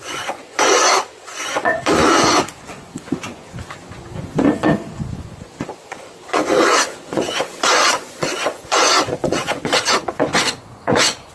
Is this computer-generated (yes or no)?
yes